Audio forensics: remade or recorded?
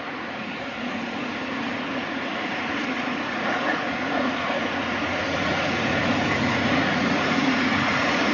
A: remade